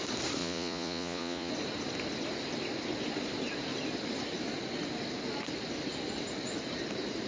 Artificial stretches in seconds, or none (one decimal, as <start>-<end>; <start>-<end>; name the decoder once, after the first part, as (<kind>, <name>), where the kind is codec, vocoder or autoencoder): 0.4-1.5 (vocoder, Vocos)